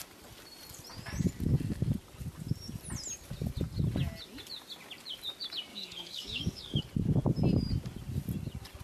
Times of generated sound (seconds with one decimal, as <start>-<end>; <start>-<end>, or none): 5.7-6.8